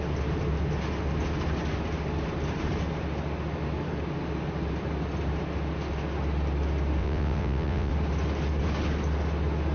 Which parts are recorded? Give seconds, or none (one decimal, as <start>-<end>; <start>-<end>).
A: 0.0-7.0; 7.9-9.7